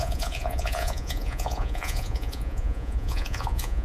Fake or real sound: fake